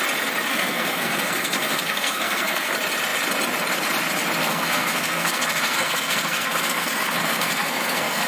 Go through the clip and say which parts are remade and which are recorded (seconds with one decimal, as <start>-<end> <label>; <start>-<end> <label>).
0.0-0.5 recorded; 0.5-2.7 remade; 2.7-4.4 recorded; 4.4-8.3 remade